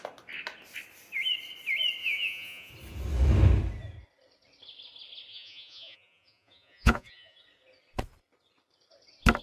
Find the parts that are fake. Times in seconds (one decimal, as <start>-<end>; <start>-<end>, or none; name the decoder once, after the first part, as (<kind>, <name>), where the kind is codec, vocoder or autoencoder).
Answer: 2.0-2.7 (vocoder, Vocos); 5.3-7.4